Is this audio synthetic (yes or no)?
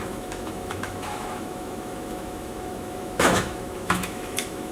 yes